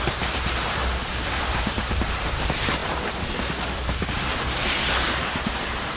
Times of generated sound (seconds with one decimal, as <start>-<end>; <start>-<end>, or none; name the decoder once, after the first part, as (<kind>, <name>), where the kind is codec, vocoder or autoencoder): 0.0-2.8 (vocoder, BigVGAN v2); 5.2-6.0